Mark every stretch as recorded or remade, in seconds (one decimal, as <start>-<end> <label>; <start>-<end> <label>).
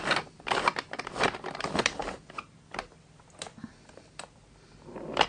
0.0-3.5 recorded; 3.5-4.0 remade; 4.0-5.3 recorded